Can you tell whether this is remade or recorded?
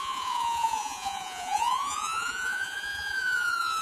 remade